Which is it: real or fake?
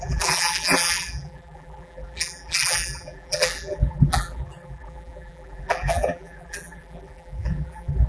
fake